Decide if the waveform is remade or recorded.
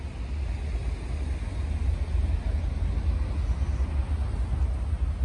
recorded